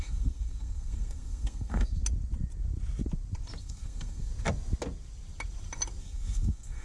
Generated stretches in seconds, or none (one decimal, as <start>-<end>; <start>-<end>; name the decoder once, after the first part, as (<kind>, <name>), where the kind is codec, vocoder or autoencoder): 0.0-2.0 (codec, SNAC); 3.6-4.3; 6.0-6.8